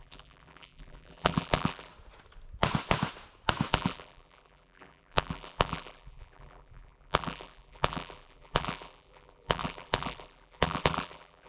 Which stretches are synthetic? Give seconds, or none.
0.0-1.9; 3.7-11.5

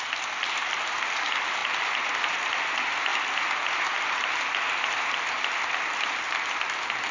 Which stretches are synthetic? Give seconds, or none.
none

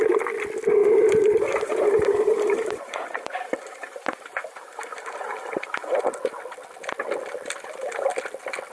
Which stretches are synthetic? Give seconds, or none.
0.8-5.9

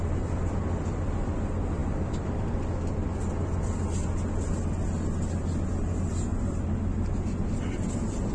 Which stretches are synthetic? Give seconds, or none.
1.8-2.4; 6.3-7.1